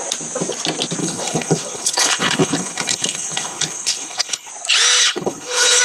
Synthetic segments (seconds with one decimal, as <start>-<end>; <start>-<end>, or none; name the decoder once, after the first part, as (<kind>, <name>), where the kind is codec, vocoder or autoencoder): 1.0-4.5 (codec, HILCodec); 5.0-5.8